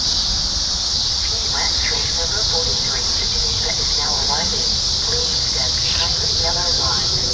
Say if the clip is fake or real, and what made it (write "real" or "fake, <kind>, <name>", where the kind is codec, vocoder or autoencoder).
real